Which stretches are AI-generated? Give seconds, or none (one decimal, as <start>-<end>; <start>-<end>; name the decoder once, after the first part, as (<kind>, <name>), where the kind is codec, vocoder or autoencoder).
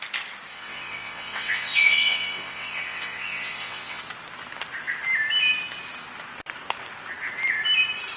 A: 0.5-4.0 (vocoder, WaveNeXt)